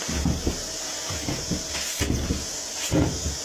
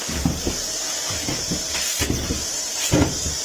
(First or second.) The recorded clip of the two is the first